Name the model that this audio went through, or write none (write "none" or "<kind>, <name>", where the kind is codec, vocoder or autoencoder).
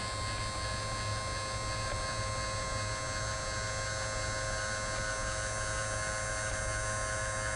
none